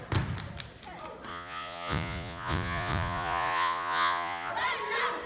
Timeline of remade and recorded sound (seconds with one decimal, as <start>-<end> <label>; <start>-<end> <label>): 0.0-1.3 recorded; 1.3-4.5 remade; 4.5-5.3 recorded

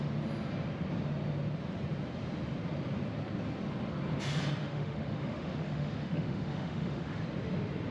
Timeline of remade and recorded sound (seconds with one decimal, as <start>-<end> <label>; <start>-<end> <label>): 0.0-4.6 recorded; 4.6-7.2 remade; 7.2-7.9 recorded

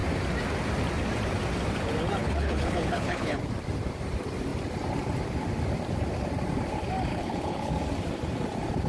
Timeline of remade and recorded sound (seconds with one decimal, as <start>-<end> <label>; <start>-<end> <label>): 0.0-2.2 recorded; 2.2-3.4 remade; 3.4-7.1 recorded; 7.1-7.7 remade; 7.7-8.9 recorded

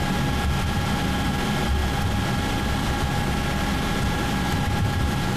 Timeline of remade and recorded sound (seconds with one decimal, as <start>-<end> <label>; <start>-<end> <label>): 0.0-1.8 recorded; 1.8-4.3 remade; 4.3-5.4 recorded

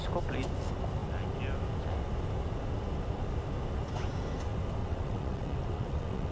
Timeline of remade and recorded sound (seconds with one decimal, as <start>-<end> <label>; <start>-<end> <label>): 0.0-4.8 recorded; 4.8-6.3 remade

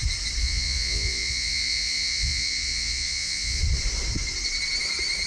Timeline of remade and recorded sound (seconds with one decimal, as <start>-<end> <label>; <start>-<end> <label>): 0.0-0.4 recorded; 0.4-3.6 remade; 3.6-5.3 recorded